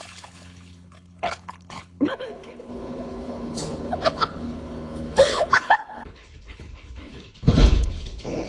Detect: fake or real fake